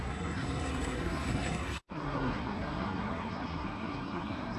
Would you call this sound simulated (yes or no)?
yes